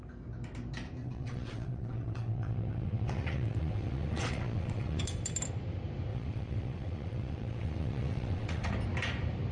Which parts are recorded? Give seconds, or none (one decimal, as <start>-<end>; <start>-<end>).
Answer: 0.0-1.0; 5.0-6.1; 8.7-9.5